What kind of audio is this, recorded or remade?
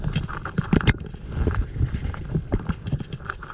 recorded